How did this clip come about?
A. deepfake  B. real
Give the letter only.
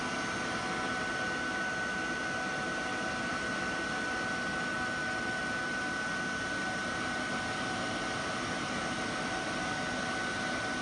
B